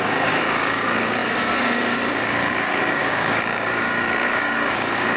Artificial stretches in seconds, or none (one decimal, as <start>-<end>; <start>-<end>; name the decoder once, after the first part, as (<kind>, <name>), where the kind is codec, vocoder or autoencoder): 0.0-5.2 (codec, DAC)